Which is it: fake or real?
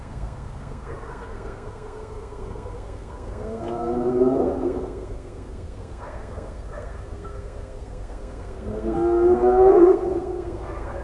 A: fake